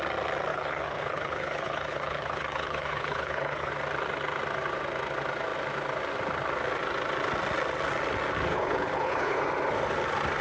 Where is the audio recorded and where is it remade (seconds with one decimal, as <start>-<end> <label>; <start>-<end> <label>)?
0.0-0.5 recorded; 0.5-3.7 remade; 3.7-8.5 recorded; 8.5-9.4 remade; 9.4-10.4 recorded